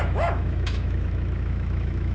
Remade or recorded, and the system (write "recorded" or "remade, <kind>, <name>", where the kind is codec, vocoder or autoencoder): remade, autoencoder, DAC-VAE